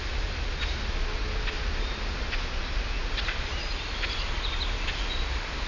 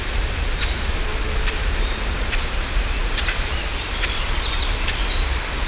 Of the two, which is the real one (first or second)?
first